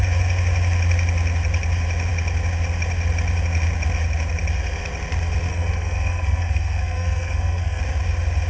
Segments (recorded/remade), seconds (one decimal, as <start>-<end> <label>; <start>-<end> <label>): 0.0-5.5 recorded; 5.5-7.8 remade; 7.8-8.5 recorded